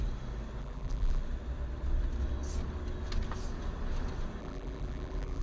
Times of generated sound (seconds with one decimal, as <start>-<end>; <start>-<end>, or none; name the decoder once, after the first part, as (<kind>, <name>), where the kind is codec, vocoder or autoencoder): 0.6-1.2 (vocoder, BigVGAN v2); 4.4-5.4